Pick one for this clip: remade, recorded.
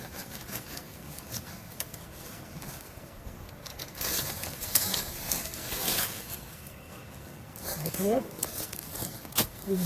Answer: remade